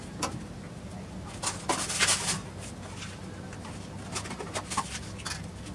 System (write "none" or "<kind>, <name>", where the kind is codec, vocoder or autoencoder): none